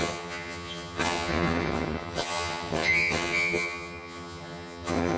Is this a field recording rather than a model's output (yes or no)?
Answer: no